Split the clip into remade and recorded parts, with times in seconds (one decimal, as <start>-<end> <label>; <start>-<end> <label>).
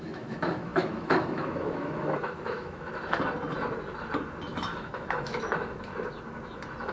0.0-2.9 remade; 2.9-4.5 recorded; 4.5-5.9 remade; 5.9-6.9 recorded